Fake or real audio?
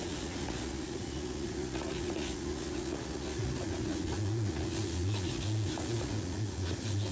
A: fake